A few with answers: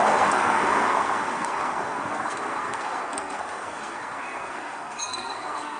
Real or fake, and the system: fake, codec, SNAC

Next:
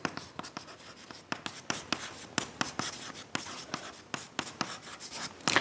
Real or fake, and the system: real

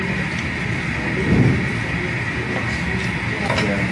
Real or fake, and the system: real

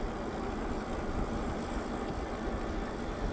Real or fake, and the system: real